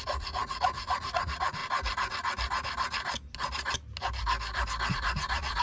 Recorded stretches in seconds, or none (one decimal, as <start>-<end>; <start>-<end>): 1.6-4.9